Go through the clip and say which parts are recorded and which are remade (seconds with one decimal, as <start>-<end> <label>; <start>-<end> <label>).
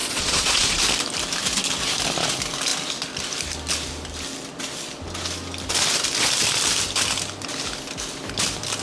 0.0-0.8 remade; 0.8-8.8 recorded